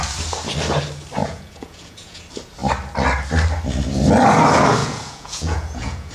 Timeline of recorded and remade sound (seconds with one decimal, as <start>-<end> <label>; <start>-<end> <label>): 0.0-1.2 recorded; 1.2-2.2 remade; 2.2-4.8 recorded; 4.8-6.1 remade